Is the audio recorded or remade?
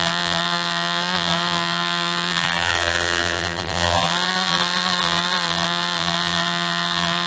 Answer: remade